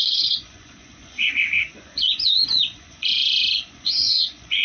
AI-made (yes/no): yes